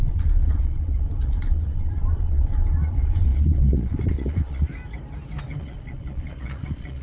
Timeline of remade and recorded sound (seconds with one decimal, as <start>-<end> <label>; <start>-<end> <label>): 0.0-4.7 remade; 4.7-5.6 recorded; 5.6-7.0 remade